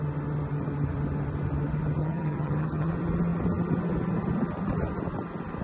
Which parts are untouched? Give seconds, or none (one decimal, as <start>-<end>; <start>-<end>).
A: 0.0-2.0; 2.9-5.6

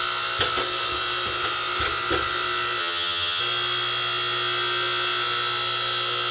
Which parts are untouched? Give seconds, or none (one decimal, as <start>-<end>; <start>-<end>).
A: 0.0-2.8; 3.4-6.3

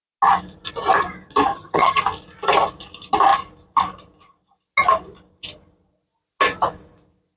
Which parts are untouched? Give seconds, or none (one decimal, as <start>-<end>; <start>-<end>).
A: 0.0-1.5; 2.0-7.4